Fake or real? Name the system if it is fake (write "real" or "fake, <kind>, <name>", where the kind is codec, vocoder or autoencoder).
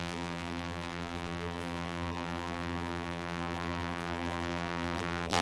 fake, vocoder, BigVGAN v2